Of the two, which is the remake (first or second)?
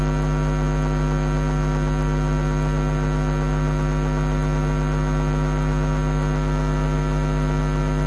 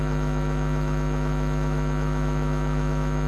second